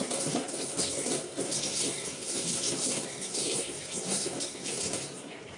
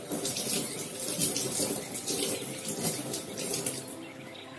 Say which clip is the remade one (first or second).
first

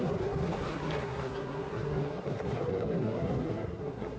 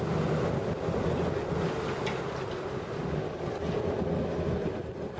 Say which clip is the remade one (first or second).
first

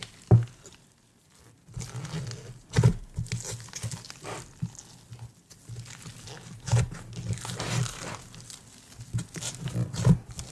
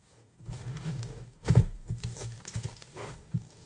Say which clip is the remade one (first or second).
second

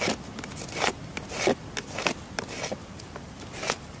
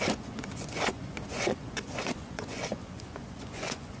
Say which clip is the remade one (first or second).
second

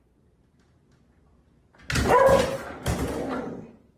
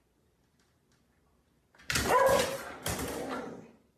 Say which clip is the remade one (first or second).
second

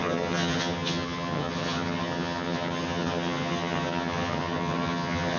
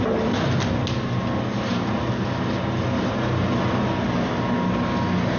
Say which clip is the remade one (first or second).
first